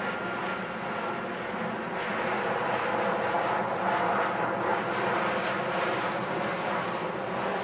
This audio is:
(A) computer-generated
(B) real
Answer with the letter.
B